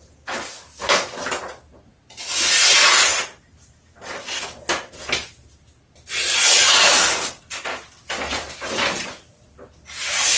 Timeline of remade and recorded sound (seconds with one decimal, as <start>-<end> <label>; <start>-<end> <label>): 0.0-0.5 recorded; 0.5-1.2 remade; 1.2-10.4 recorded